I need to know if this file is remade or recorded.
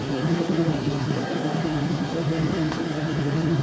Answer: remade